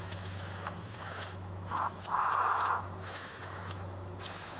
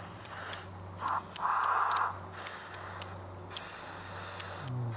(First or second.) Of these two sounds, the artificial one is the first